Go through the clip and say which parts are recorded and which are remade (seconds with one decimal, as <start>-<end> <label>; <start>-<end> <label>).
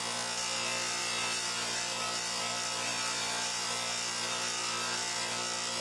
0.0-5.8 recorded